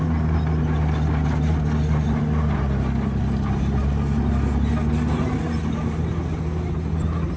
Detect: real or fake real